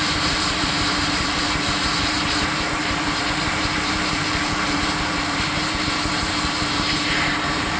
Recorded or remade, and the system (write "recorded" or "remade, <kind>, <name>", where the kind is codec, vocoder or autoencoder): remade, vocoder, BigVGAN v2